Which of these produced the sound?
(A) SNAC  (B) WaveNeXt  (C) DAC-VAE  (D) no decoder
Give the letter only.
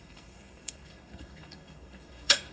A